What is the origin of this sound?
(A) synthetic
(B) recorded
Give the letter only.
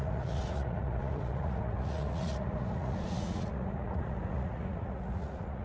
A